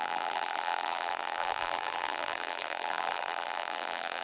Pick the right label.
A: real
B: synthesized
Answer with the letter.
B